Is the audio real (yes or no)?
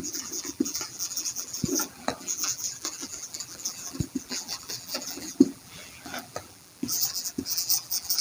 no